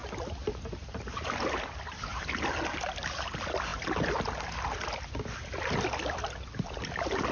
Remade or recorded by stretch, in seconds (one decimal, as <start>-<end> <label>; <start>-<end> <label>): 0.0-7.3 recorded